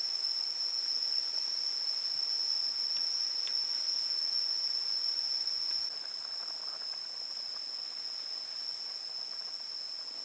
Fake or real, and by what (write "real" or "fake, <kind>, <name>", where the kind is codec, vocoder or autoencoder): real